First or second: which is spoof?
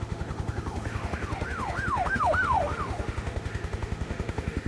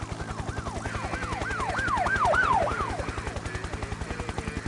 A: first